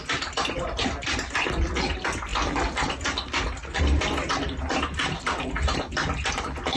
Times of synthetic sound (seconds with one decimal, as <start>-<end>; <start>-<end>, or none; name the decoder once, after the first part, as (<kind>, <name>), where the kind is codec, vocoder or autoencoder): none